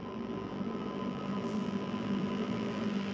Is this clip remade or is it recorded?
remade